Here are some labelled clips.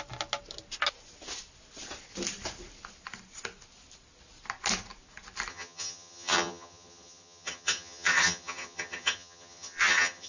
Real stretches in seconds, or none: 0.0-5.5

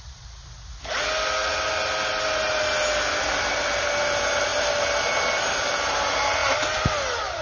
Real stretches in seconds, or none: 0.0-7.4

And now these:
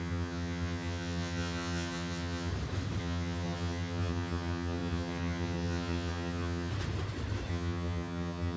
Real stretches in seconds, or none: 2.5-3.0; 6.7-7.5